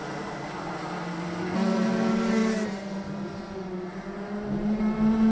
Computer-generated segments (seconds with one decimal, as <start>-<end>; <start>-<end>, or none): 3.9-4.8